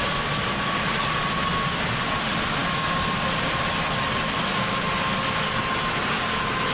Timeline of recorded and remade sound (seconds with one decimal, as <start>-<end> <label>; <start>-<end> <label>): 0.0-6.7 recorded